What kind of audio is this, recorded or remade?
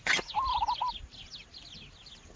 recorded